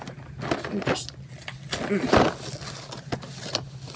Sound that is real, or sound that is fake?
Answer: real